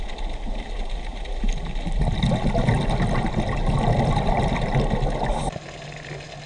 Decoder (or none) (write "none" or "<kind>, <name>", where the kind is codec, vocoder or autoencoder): none